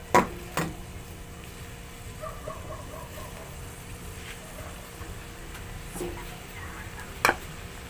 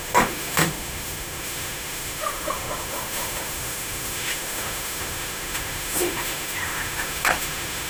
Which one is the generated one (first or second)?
second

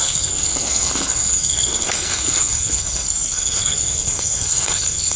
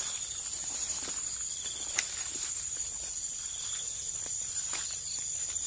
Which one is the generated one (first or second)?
first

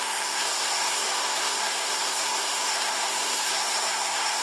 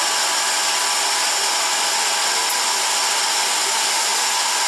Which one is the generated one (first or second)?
first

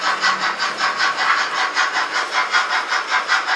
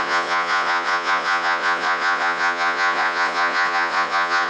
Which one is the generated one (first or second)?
second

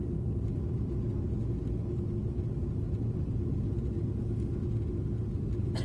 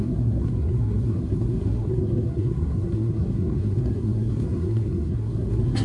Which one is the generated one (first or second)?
second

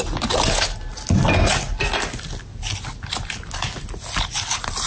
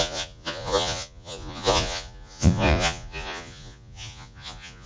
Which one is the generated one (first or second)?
second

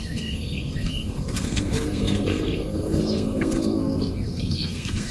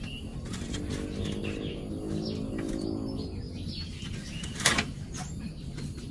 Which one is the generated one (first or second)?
first